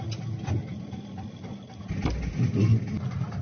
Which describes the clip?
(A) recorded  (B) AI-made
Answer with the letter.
A